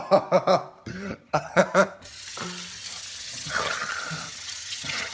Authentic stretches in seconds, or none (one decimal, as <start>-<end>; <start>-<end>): 0.0-0.8; 1.6-3.3; 3.9-4.6